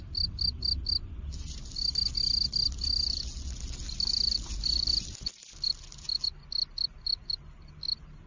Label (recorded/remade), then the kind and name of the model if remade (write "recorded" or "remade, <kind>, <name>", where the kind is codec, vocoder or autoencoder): recorded